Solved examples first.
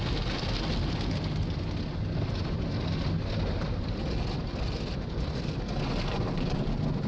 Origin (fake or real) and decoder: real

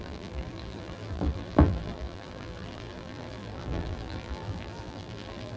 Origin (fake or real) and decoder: fake, vocoder, BigVGAN v2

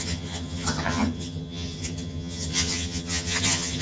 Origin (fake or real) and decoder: fake, vocoder, HiFi-GAN